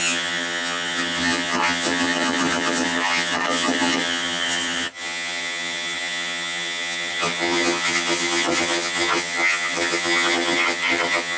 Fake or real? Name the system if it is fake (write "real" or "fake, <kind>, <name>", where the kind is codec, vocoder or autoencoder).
fake, vocoder, HiFi-GAN